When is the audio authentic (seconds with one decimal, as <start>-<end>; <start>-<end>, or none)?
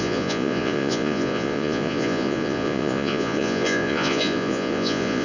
none